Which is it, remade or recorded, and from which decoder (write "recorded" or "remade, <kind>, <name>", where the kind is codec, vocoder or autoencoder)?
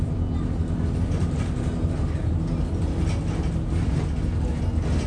recorded